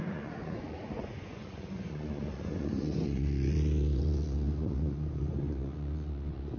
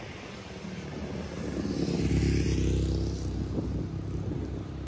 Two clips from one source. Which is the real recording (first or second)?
second